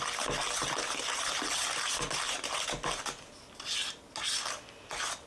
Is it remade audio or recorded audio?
recorded